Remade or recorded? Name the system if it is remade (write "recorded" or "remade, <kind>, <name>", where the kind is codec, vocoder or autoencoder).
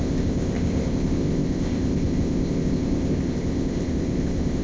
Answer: remade, codec, ZipCodec